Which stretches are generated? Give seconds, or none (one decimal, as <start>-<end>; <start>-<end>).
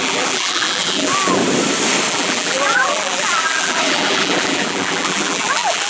0.0-1.4; 2.1-5.9